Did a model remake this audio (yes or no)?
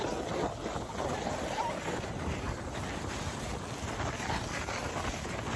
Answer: no